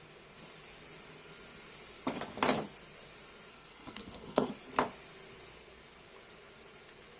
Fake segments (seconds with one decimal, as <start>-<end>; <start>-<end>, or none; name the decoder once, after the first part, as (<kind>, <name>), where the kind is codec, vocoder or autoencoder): 3.5-4.5 (codec, SNAC)